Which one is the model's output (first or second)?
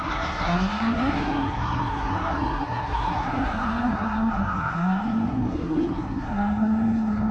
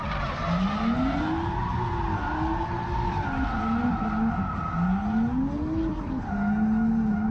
first